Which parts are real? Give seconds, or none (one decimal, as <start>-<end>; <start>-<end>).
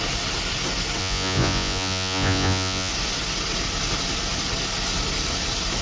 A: 0.0-1.0; 2.9-5.8